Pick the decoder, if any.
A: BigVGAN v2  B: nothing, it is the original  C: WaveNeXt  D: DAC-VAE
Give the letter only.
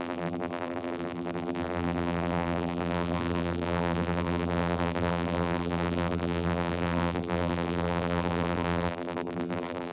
A